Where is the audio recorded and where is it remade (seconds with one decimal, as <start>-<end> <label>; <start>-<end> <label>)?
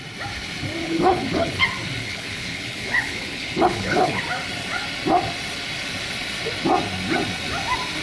0.0-0.8 recorded; 0.8-1.6 remade; 1.6-2.0 recorded; 2.0-4.2 remade; 4.2-8.0 recorded